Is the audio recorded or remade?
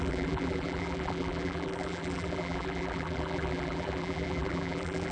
remade